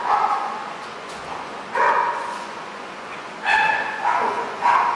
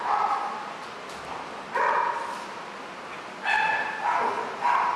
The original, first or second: second